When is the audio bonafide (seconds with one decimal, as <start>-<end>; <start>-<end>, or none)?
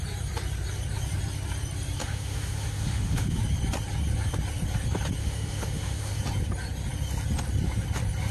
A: 0.0-2.0; 3.4-5.2; 6.2-8.3